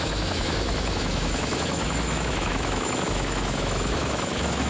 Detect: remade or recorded remade